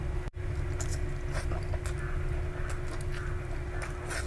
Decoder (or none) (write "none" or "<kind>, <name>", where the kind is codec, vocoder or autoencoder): none